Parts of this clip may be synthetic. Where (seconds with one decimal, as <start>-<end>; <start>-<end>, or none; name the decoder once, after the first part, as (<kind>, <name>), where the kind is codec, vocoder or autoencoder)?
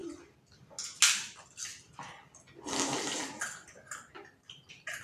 none